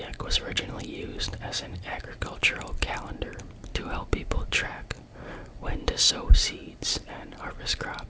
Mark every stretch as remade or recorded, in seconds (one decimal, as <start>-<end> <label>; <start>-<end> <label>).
0.0-1.8 recorded; 1.8-2.7 remade; 2.7-3.7 recorded; 3.7-6.1 remade; 6.1-6.6 recorded; 6.6-7.4 remade; 7.4-8.1 recorded